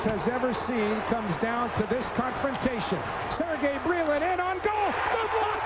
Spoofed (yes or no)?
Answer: no